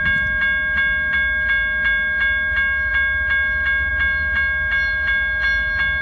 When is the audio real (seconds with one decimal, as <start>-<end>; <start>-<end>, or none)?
0.0-6.0